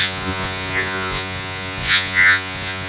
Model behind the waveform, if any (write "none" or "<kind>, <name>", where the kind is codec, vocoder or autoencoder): vocoder, Vocos